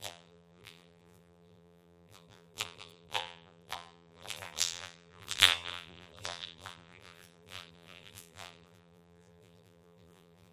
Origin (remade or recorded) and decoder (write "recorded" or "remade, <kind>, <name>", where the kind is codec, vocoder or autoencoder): remade, vocoder, BigVGAN v2